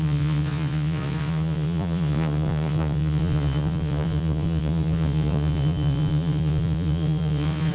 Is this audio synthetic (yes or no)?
yes